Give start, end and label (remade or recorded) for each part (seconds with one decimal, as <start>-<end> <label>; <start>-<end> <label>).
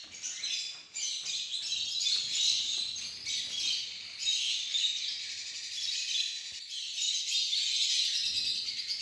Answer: 0.0-9.0 recorded